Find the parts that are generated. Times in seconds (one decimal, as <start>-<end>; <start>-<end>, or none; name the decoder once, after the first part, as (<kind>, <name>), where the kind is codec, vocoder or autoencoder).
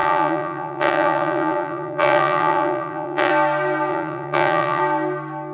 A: 0.0-3.3 (vocoder, Vocos); 3.9-4.8